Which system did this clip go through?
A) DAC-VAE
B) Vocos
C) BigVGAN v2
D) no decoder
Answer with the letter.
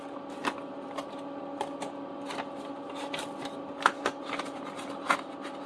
D